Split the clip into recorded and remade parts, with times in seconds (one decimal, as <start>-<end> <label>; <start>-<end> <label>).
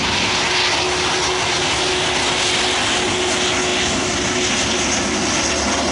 0.0-5.9 recorded